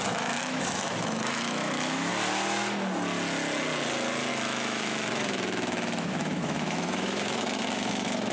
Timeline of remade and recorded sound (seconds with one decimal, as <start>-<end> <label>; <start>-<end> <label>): 0.0-2.1 remade; 2.1-4.3 recorded; 4.3-8.3 remade